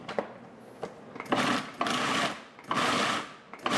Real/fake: real